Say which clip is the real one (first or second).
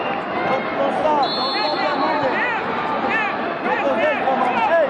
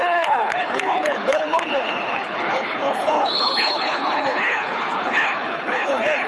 first